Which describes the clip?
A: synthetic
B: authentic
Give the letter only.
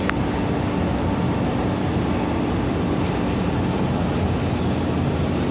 B